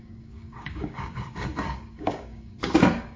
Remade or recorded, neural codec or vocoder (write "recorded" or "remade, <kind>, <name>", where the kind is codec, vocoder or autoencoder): remade, codec, DAC